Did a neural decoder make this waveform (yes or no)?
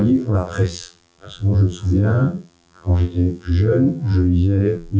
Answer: yes